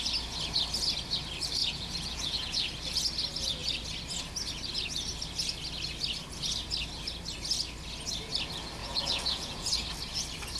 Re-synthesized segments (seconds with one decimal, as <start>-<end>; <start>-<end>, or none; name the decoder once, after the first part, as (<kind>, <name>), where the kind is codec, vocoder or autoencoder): 1.6-2.7 (vocoder, Vocos); 8.8-9.7